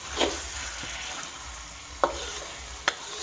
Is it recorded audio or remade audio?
recorded